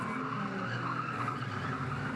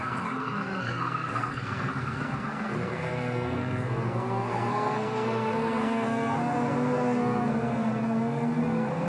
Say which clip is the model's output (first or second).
second